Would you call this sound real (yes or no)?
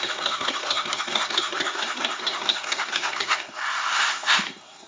no